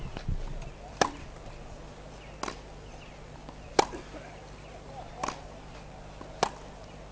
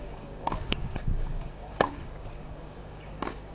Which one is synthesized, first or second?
second